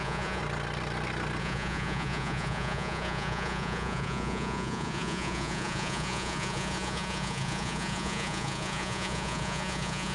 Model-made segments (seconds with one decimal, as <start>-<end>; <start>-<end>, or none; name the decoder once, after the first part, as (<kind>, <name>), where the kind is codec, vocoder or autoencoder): 0.0-0.4 (vocoder, Vocos); 1.4-10.1